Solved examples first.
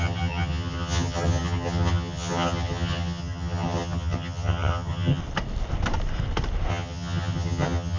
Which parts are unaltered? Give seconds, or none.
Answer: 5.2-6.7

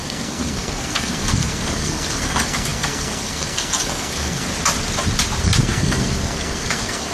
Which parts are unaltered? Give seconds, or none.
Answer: 4.5-5.4

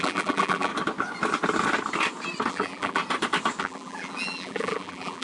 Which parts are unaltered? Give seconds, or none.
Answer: 0.7-2.5; 3.0-3.6

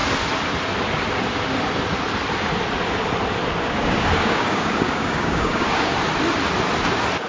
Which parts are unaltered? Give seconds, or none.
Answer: 0.0-3.6; 5.9-7.3

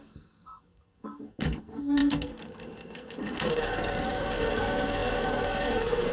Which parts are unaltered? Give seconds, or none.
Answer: none

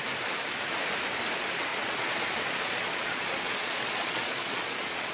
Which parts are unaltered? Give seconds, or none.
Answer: 0.0-1.7

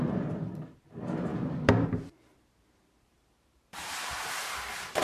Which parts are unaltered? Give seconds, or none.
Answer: 0.0-1.3; 4.3-5.0

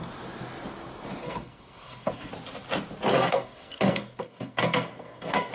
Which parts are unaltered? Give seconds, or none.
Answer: 0.0-1.2; 2.3-3.1